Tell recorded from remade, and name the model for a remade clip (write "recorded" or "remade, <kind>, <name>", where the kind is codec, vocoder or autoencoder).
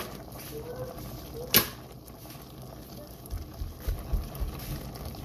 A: recorded